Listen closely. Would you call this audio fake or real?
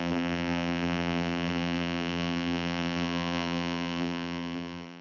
fake